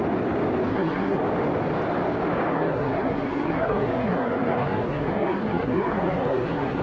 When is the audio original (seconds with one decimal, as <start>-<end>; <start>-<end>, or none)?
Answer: 0.0-0.7; 1.2-2.5